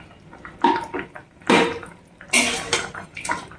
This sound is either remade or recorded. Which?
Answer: recorded